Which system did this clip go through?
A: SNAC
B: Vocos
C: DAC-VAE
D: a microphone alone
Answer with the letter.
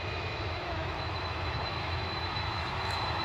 C